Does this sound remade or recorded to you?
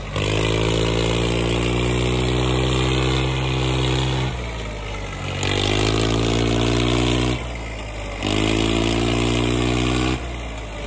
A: recorded